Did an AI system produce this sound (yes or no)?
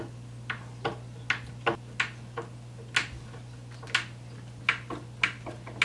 no